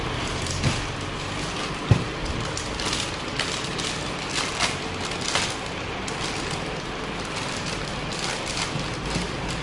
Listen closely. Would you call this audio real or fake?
real